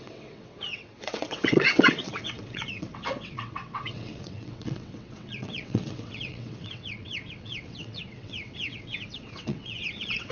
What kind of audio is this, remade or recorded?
remade